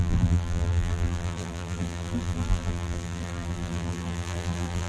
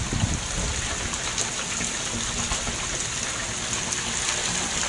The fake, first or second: first